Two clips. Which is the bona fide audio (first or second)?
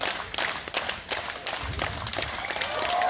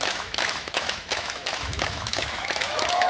first